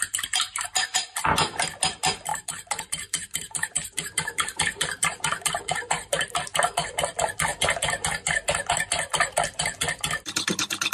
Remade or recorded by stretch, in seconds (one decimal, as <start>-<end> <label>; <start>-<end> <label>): 0.0-2.3 recorded; 2.3-6.4 remade; 6.4-10.9 recorded